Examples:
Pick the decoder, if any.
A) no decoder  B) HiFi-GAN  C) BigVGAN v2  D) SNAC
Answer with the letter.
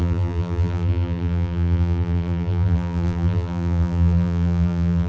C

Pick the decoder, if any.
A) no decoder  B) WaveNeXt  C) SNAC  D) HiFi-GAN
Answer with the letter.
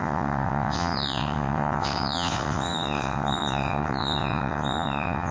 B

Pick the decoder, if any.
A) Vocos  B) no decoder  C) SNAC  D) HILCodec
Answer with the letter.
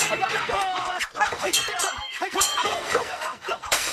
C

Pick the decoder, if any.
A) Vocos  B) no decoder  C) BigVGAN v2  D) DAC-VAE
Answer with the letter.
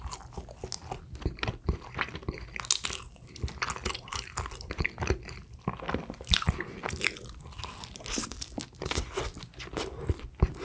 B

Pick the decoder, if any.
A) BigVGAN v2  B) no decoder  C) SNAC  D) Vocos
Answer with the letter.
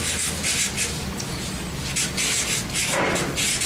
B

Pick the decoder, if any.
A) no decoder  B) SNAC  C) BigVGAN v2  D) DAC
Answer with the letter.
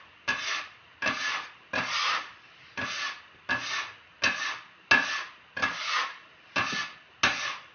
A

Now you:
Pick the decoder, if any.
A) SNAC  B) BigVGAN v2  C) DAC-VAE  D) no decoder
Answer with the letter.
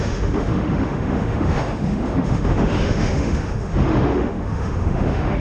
C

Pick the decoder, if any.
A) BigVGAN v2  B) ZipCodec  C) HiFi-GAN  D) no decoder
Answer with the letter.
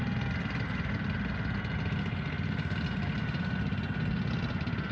D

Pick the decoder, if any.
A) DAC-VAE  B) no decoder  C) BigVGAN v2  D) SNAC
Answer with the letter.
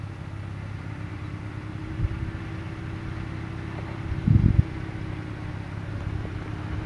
B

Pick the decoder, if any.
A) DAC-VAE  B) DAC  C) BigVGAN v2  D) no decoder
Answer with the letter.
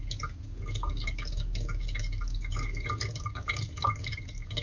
B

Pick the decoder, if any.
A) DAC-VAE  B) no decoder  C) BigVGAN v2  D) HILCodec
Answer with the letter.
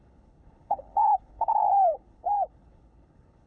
D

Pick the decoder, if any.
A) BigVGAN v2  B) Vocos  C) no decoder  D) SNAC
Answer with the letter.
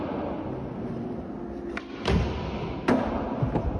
C